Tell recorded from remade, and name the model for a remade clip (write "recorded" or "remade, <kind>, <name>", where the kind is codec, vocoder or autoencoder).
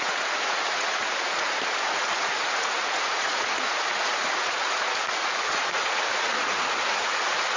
remade, vocoder, Vocos